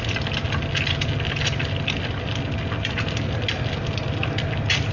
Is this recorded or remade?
recorded